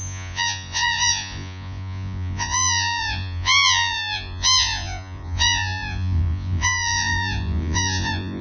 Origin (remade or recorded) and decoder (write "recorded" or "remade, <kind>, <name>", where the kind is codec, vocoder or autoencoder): remade, vocoder, Vocos